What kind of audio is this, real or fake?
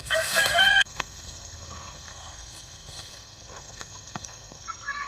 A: fake